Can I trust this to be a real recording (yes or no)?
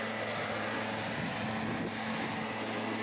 yes